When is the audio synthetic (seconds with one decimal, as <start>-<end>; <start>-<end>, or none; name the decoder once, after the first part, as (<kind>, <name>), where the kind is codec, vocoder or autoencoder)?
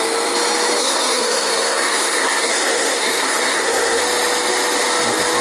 0.8-4.0 (codec, SNAC)